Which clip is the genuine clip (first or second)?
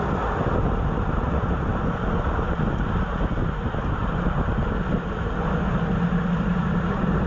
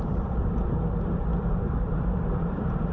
first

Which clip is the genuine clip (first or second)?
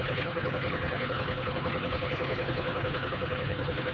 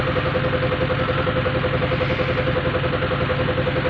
second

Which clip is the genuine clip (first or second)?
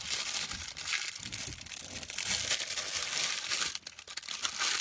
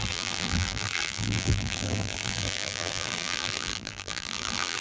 first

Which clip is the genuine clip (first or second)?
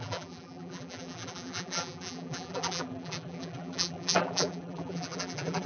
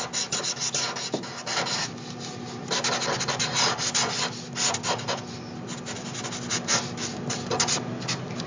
second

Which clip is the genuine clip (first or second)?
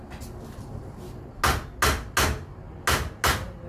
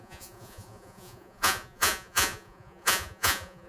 first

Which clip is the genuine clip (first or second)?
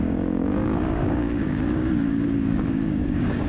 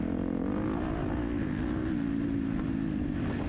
second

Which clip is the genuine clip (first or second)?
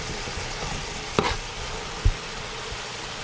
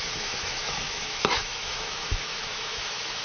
first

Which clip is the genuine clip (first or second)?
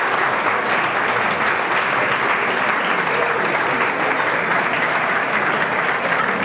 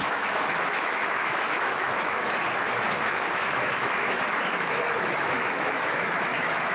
first